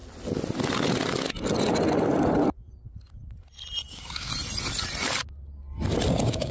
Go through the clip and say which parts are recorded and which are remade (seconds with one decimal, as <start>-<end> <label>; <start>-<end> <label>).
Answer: 0.0-3.9 recorded; 3.9-4.3 remade; 4.3-6.1 recorded; 6.1-6.5 remade